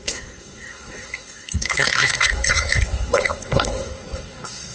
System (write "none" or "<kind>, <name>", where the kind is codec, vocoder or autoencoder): codec, SNAC